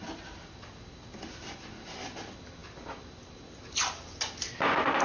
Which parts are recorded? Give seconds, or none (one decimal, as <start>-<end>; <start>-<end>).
0.0-5.0